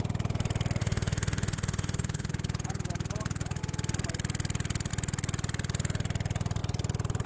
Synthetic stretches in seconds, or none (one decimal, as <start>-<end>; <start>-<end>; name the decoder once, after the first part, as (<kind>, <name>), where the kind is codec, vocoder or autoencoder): 0.8-2.3 (autoencoder, DAC-VAE)